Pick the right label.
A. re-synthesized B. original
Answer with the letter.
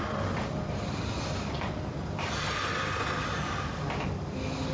B